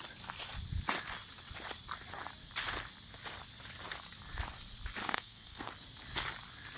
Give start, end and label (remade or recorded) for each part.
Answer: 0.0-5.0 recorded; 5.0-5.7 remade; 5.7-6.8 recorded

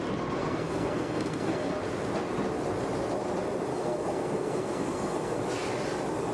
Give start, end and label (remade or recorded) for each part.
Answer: 0.0-0.4 recorded; 0.4-1.7 remade; 1.7-3.7 recorded; 3.7-5.4 remade; 5.4-6.3 recorded

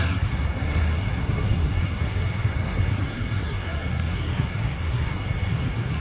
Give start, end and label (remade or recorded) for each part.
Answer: 0.0-6.0 remade